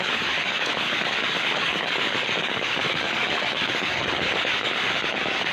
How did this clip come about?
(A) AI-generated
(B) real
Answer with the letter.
A